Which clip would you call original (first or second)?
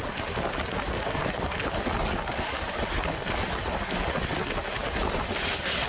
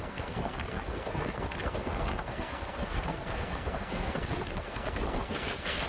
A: first